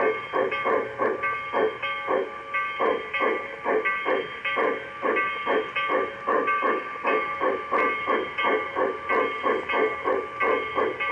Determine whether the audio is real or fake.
real